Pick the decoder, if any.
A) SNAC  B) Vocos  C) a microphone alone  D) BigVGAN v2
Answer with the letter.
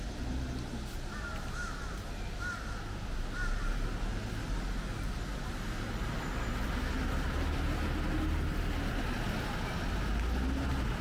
C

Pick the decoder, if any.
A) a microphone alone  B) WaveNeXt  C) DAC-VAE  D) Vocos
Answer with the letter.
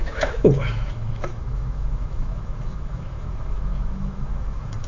C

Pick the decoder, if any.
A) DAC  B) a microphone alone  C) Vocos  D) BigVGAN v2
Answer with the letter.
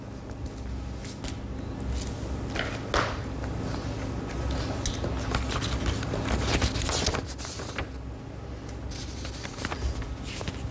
B